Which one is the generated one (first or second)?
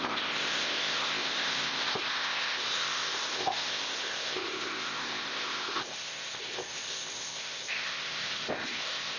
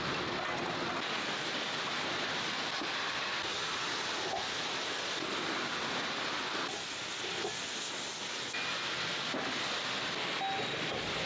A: first